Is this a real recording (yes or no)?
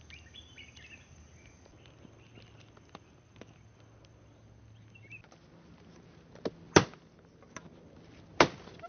yes